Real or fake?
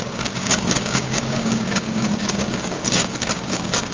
fake